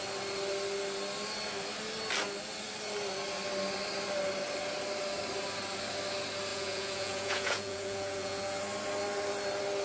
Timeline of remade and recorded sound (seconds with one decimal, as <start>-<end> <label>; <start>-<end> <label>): 0.0-6.5 recorded; 6.5-8.6 remade; 8.6-9.8 recorded